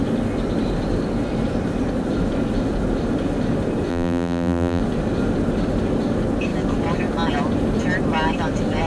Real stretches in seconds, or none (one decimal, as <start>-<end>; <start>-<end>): 0.0-3.9; 4.8-8.9